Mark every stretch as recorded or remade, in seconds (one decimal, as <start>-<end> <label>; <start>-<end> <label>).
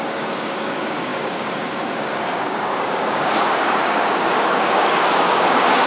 0.0-5.9 remade